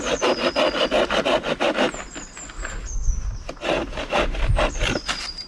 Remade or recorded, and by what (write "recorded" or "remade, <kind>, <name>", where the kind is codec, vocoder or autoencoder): recorded